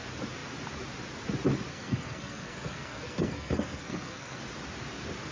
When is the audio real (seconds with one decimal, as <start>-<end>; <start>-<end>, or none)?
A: 0.0-1.7; 4.4-5.3